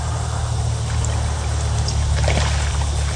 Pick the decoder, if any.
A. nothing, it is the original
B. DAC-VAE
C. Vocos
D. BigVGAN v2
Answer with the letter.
A